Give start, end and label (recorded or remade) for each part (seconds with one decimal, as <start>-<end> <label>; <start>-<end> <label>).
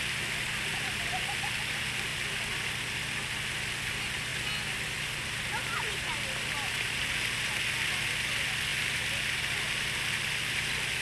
0.0-11.0 recorded